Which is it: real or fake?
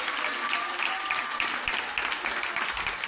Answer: real